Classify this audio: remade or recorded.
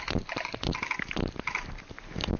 recorded